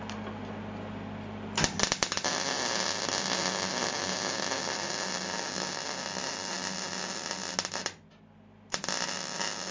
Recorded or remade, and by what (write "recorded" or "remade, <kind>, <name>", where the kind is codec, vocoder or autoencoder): recorded